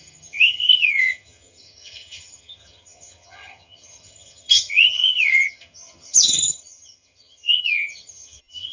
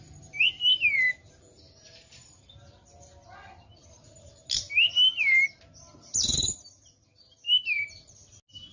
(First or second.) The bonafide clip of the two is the second